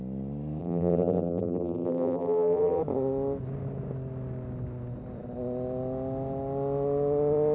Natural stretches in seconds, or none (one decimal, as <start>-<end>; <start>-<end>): 0.0-0.6; 2.8-7.5